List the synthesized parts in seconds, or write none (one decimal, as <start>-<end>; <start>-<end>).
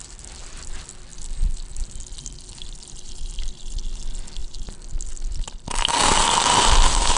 1.1-3.8; 4.4-5.8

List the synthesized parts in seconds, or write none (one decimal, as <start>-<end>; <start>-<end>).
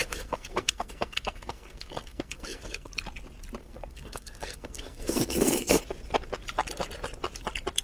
0.0-2.9; 3.6-5.8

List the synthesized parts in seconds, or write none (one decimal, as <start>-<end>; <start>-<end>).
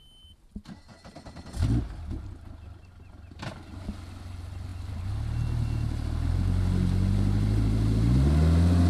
none